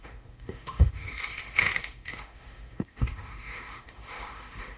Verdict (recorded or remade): remade